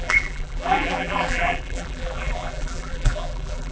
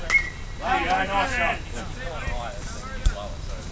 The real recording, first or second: second